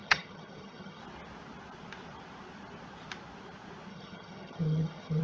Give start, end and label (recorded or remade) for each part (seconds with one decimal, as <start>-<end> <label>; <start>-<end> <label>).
0.0-1.0 remade; 1.0-3.9 recorded; 3.9-5.2 remade